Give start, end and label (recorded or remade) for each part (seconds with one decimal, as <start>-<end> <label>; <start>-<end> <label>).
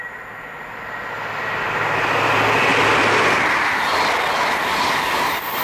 0.0-5.6 recorded